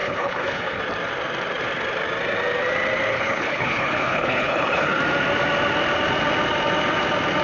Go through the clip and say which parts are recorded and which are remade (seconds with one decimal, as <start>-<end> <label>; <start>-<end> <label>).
0.0-0.8 remade; 0.8-3.1 recorded; 3.1-5.0 remade; 5.0-7.4 recorded